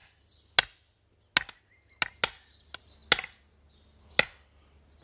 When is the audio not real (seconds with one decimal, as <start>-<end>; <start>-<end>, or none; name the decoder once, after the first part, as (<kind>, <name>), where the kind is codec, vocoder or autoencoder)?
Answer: none